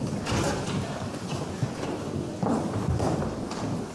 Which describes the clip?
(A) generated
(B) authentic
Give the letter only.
B